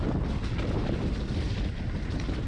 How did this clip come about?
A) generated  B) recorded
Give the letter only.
B